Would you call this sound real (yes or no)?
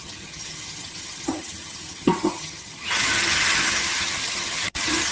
no